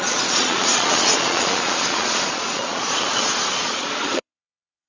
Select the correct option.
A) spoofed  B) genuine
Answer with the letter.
A